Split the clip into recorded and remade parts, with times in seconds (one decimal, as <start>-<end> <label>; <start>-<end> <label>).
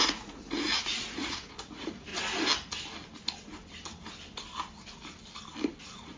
0.0-2.1 remade; 2.1-5.8 recorded; 5.8-6.2 remade